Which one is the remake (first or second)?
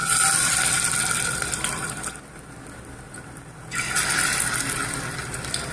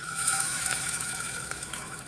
second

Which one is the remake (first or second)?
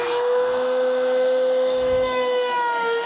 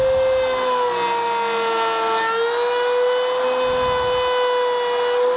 first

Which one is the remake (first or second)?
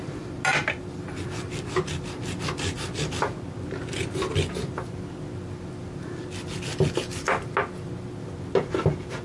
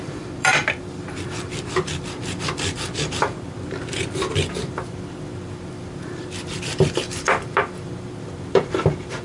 second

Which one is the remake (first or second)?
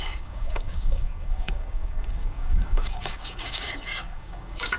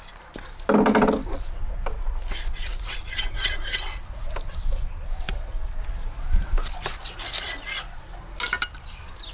first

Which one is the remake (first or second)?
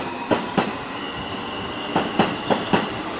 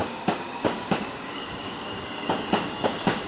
second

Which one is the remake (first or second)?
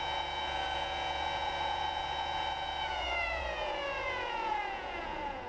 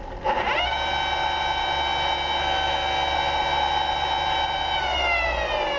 first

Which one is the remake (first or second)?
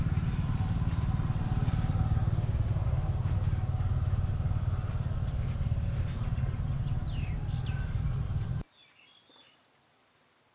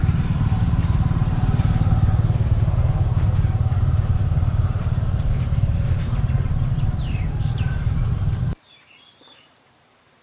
second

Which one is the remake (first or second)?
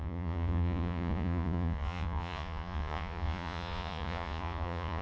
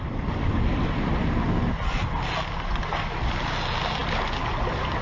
first